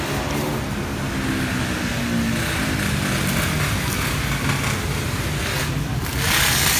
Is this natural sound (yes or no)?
yes